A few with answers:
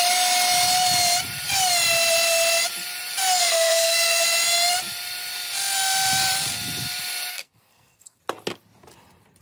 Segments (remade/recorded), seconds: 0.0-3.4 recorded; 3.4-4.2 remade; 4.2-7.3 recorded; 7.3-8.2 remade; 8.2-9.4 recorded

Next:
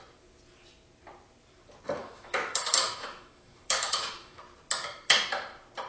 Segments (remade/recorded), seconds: 0.0-2.0 recorded; 2.0-4.4 remade; 4.4-5.9 recorded

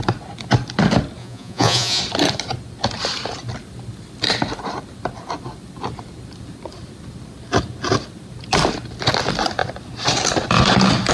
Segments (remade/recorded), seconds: 0.0-1.2 recorded; 1.2-2.0 remade; 2.0-11.1 recorded

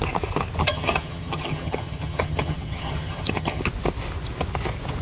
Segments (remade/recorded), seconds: 0.0-0.6 recorded; 0.6-3.6 remade; 3.6-5.0 recorded

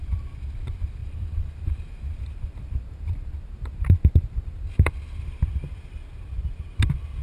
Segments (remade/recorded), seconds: 0.0-1.0 recorded; 1.0-4.9 remade; 4.9-7.2 recorded